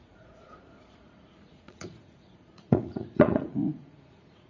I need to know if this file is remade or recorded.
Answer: remade